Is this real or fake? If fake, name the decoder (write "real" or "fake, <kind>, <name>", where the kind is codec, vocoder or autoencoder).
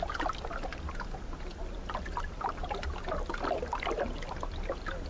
real